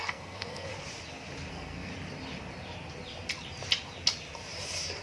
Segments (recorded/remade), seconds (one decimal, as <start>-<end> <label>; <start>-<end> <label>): 0.0-0.7 remade; 0.7-1.5 recorded; 1.5-1.9 remade; 1.9-5.0 recorded